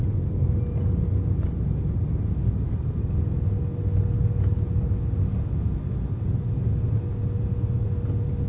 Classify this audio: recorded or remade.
recorded